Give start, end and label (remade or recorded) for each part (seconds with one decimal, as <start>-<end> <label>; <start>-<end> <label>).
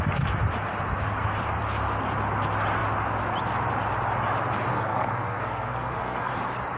0.0-4.7 recorded; 4.7-6.3 remade; 6.3-6.8 recorded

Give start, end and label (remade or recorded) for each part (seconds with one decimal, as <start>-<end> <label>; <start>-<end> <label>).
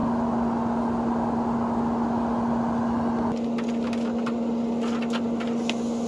0.0-6.1 recorded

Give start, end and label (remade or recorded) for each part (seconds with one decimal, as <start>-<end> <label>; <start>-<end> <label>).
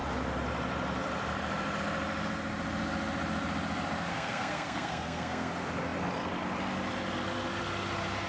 0.0-4.1 recorded; 4.1-5.5 remade; 5.5-8.3 recorded